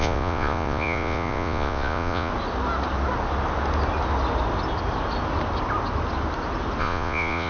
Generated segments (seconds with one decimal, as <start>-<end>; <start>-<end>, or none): 0.0-2.3; 6.8-7.5